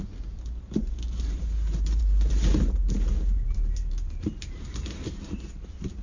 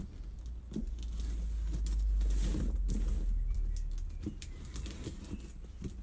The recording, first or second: second